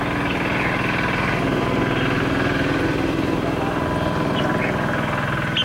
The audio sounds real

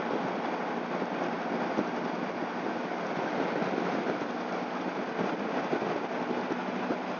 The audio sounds real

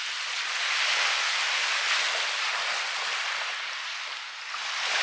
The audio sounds real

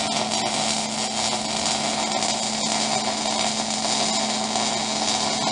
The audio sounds real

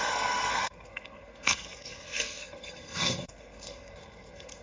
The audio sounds fake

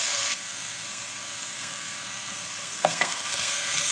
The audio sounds fake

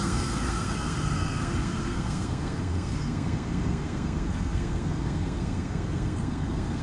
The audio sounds fake